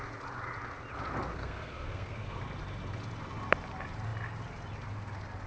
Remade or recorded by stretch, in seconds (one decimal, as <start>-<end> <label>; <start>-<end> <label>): 0.0-1.3 recorded; 1.3-2.4 remade; 2.4-5.5 recorded